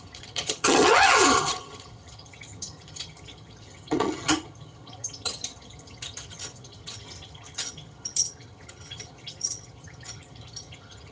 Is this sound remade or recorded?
remade